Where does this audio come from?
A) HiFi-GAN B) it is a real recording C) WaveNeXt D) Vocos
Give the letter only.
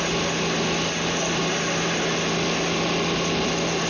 B